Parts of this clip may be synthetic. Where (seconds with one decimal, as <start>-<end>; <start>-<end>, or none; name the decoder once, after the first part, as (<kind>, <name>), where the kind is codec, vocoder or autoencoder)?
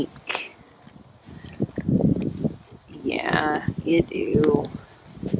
none